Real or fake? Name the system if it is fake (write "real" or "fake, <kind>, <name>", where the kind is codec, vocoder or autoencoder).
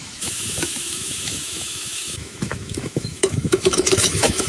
fake, autoencoder, DAC-VAE